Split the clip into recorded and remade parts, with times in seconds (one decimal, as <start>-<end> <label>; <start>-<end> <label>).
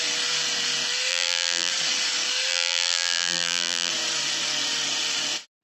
0.0-1.1 recorded; 1.1-1.7 remade; 1.7-2.5 recorded; 2.5-3.9 remade; 3.9-5.6 recorded